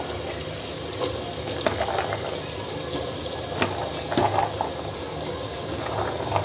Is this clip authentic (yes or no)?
yes